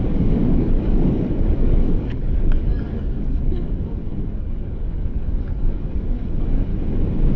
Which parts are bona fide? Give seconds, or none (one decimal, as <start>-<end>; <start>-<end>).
6.7-7.4

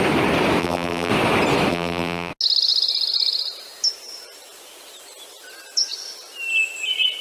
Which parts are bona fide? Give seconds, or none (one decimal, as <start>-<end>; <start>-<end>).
0.0-0.6; 1.1-1.7; 2.3-7.2

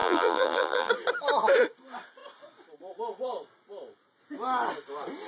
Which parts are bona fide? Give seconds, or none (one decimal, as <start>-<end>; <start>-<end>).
0.9-5.3

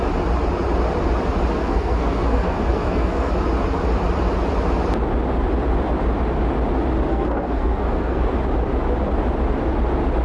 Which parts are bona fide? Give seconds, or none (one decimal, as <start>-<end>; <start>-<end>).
0.0-1.6; 3.3-7.1; 8.2-10.2

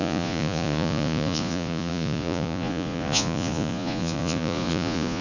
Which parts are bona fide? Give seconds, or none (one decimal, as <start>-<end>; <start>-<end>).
none

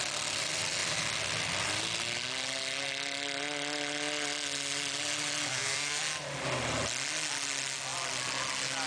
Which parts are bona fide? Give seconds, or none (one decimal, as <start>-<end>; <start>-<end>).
0.0-5.5; 6.0-8.9